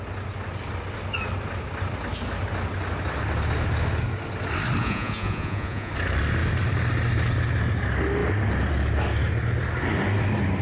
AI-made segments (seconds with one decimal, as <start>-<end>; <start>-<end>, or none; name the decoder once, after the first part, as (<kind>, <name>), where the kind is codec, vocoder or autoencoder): 4.8-5.9 (vocoder, Vocos)